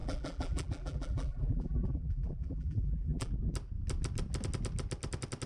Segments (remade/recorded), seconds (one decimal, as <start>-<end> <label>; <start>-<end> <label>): 0.0-3.3 remade; 3.3-5.5 recorded